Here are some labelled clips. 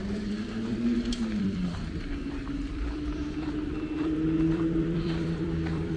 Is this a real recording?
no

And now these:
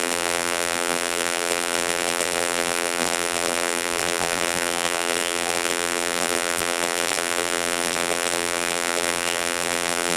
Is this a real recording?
no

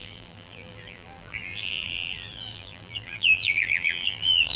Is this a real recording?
no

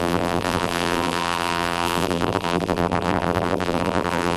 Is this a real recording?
no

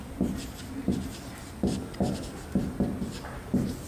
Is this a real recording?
yes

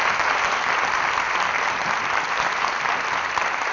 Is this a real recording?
yes